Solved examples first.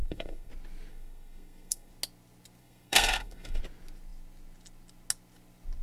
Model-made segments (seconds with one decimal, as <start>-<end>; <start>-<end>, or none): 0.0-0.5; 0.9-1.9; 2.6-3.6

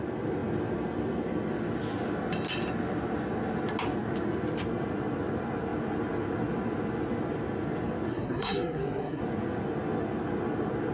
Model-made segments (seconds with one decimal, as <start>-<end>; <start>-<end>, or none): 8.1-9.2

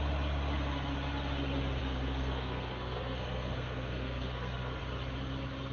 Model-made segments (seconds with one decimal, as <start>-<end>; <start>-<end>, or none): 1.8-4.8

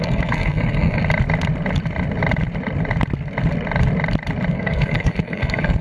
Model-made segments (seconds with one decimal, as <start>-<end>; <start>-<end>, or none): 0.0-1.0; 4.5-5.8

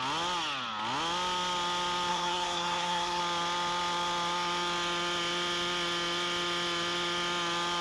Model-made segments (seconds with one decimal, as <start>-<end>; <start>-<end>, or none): 2.1-3.2

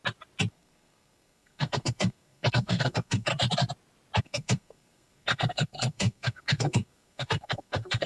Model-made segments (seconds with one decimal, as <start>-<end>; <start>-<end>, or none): 0.5-3.3; 4.2-8.1

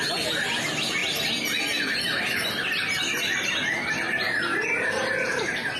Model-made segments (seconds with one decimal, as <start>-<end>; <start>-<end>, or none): none